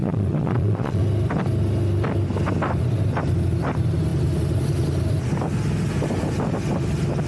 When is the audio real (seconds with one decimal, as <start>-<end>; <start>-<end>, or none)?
1.0-7.3